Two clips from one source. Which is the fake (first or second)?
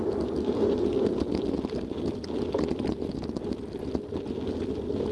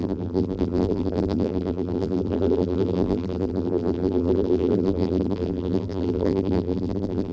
second